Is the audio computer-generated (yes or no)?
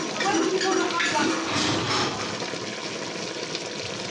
no